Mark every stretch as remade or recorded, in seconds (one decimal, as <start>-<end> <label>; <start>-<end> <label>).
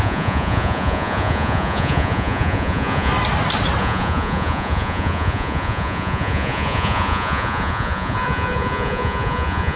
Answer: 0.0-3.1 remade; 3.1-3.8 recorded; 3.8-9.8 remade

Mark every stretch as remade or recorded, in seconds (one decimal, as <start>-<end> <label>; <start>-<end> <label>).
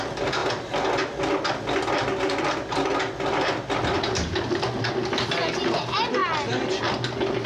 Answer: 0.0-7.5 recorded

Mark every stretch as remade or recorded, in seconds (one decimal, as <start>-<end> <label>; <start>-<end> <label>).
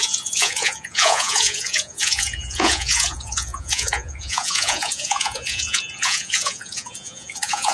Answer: 0.0-7.7 remade